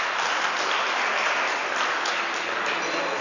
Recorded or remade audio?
recorded